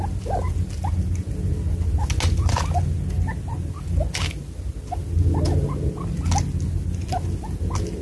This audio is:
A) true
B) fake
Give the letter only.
A